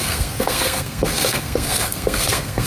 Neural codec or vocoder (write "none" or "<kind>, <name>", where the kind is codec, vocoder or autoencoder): codec, SNAC